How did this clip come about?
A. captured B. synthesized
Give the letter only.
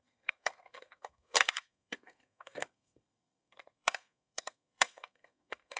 B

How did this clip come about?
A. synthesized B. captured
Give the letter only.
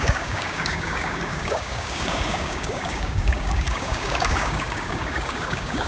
A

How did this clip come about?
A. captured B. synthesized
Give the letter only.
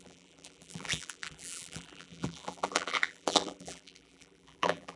B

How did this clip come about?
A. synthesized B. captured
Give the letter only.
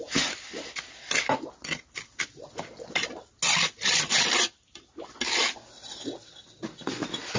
B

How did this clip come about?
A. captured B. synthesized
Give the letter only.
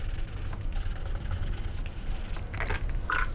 A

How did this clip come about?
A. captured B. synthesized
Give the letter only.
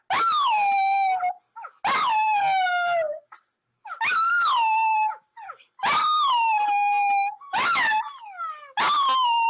A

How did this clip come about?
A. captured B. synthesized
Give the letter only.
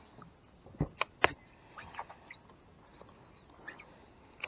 A